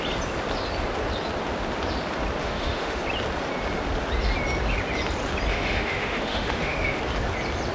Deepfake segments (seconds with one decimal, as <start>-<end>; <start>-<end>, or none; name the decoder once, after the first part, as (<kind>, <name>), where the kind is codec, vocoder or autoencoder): 2.4-3.0 (autoencoder, DAC-VAE); 5.5-7.0